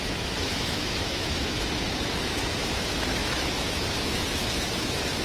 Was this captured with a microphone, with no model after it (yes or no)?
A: no